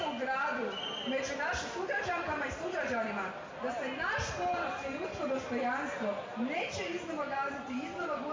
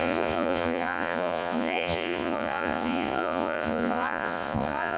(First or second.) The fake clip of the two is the second